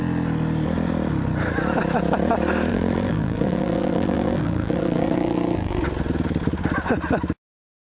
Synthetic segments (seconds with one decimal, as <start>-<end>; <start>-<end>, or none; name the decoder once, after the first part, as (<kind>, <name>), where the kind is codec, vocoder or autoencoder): 2.7-5.8 (vocoder, BigVGAN v2)